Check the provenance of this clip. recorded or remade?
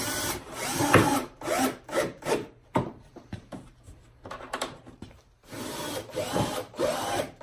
remade